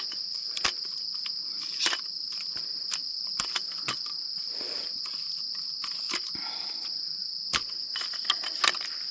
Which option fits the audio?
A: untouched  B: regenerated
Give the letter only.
A